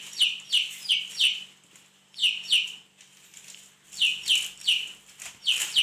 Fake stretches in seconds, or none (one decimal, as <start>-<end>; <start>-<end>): none